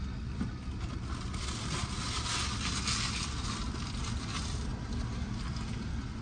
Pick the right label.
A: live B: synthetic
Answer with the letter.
A